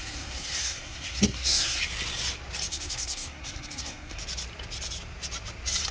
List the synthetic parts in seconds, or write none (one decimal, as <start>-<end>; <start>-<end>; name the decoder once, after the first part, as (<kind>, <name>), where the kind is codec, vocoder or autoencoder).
0.0-1.8 (codec, SNAC); 2.7-4.2

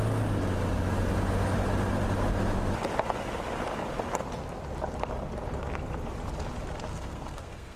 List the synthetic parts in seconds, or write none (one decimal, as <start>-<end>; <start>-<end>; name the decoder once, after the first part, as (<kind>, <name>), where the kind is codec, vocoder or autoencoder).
6.9-7.8 (codec, SNAC)

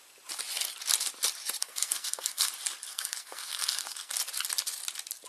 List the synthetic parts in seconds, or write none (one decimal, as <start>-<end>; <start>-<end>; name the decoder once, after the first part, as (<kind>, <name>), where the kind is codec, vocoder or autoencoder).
1.6-2.5 (codec, SNAC); 2.9-4.1

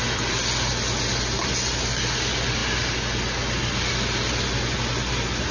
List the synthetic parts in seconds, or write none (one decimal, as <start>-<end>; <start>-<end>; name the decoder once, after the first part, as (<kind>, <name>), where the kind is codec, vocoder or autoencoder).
none

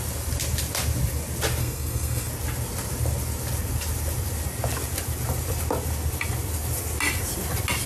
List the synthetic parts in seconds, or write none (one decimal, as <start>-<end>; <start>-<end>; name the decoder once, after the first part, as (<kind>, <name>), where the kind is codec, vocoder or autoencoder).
1.6-2.3 (codec, SNAC)

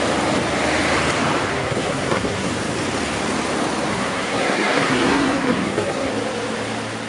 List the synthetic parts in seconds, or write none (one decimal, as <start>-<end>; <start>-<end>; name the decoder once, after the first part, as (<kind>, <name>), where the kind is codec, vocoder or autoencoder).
1.5-2.5 (codec, SNAC); 3.9-6.1

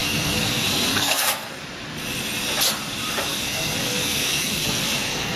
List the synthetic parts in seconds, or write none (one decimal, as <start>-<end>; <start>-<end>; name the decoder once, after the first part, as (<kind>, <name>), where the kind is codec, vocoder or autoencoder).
0.0-1.6 (codec, SNAC); 3.3-5.4